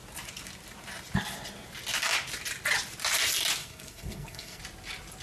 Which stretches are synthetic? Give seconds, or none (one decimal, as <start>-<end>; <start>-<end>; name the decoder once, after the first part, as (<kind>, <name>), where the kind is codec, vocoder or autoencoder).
3.6-4.6 (codec, SNAC)